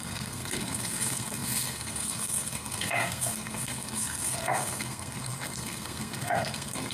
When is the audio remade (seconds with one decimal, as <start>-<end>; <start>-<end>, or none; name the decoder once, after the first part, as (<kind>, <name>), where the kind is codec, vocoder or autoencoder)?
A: 0.0-6.9 (codec, SNAC)